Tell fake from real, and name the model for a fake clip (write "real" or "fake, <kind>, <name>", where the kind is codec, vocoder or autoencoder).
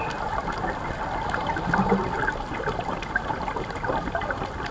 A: real